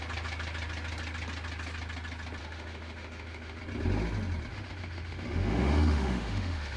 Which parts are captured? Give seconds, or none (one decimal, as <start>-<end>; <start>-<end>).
0.0-2.4; 3.6-4.5